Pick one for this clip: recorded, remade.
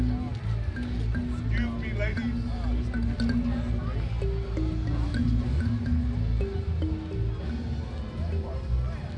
recorded